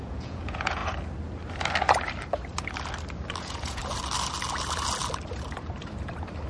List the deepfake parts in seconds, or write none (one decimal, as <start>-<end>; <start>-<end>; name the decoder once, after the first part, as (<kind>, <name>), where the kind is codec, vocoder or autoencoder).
0.0-0.8 (vocoder, Vocos); 3.4-3.8